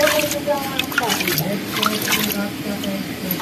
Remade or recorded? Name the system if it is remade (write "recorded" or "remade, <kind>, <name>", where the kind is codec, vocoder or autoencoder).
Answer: recorded